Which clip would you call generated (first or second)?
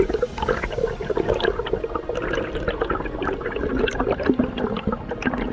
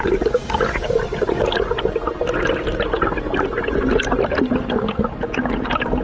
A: first